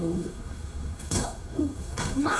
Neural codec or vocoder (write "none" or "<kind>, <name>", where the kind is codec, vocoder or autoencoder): codec, SNAC